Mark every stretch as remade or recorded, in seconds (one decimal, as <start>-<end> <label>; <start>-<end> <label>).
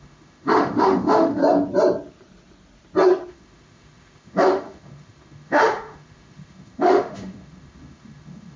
0.0-1.4 remade; 1.4-3.3 recorded; 3.3-8.6 remade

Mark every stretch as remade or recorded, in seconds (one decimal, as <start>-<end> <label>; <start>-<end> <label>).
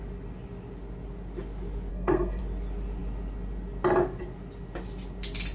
0.0-1.9 recorded; 1.9-2.4 remade; 2.4-5.5 recorded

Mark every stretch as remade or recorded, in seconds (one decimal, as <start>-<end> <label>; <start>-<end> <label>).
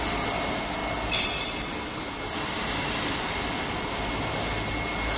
0.0-5.2 recorded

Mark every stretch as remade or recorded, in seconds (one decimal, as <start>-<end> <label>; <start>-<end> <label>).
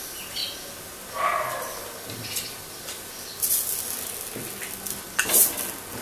0.0-6.0 recorded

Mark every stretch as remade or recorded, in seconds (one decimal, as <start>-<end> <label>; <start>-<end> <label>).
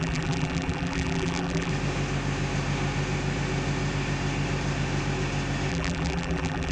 0.0-1.7 remade; 1.7-5.7 recorded; 5.7-6.7 remade